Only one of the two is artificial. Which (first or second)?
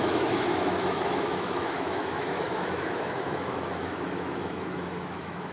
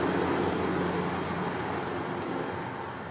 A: first